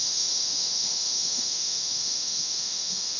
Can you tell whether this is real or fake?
fake